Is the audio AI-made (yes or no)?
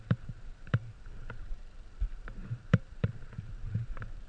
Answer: yes